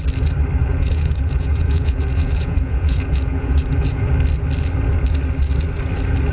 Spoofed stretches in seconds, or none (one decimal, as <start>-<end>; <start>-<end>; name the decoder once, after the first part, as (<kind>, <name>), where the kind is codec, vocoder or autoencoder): 0.6-4.0 (vocoder, Vocos)